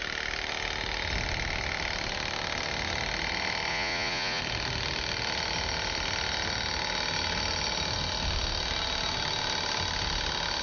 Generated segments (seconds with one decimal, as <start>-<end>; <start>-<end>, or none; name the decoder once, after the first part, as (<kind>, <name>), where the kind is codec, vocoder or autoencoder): 3.7-4.4 (vocoder, Vocos)